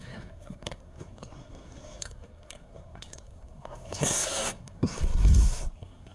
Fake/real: fake